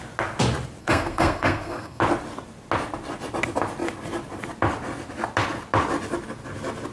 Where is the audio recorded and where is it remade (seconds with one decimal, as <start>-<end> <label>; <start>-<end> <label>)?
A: 0.0-0.8 recorded; 0.8-2.0 remade; 2.0-6.9 recorded